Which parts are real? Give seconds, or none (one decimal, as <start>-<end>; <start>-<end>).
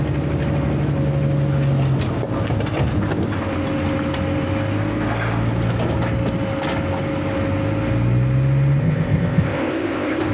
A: 0.0-8.8